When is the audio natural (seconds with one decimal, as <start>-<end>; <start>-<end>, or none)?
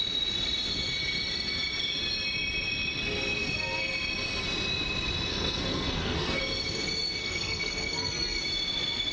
0.0-5.3; 6.4-7.2; 8.4-9.1